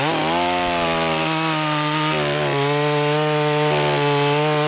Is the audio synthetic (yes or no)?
no